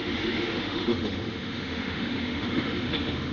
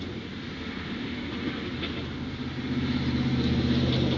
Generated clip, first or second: first